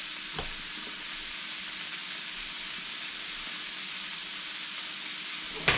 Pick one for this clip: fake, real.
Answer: real